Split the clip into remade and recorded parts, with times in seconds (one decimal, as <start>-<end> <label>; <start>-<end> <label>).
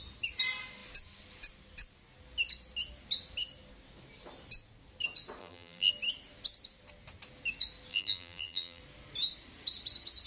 0.0-5.4 recorded; 5.4-5.9 remade; 5.9-7.9 recorded; 7.9-8.8 remade; 8.8-10.3 recorded